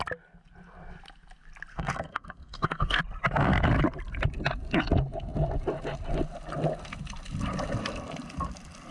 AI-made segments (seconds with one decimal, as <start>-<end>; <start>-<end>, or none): 1.7-3.0